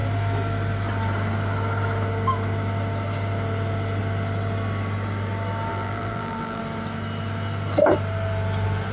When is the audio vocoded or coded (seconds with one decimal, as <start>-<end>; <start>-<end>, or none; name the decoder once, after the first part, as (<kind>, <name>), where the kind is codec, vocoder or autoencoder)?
5.7-6.6 (vocoder, BigVGAN v2)